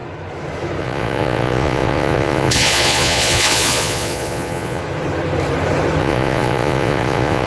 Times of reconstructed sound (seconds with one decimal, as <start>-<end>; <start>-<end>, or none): 0.8-4.8; 6.0-7.5